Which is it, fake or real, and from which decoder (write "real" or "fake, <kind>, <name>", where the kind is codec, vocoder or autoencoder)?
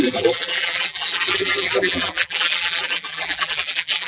fake, vocoder, BigVGAN v2